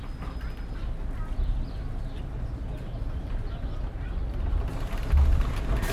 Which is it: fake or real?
real